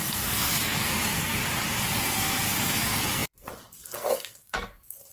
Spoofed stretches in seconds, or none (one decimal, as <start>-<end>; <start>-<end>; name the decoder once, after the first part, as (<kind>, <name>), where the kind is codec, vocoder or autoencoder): 0.0-1.4 (codec, SNAC); 2.0-5.1